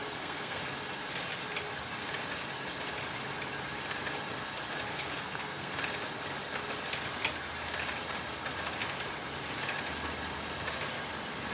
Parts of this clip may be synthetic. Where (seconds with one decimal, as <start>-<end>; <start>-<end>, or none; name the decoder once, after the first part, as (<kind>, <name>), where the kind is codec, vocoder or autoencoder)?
0.0-0.6 (codec, SNAC); 4.9-5.7